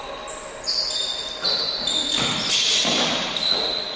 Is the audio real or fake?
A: real